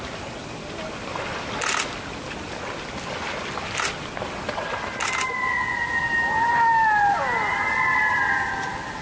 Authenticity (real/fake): real